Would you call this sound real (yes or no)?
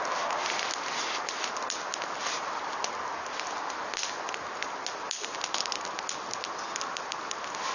yes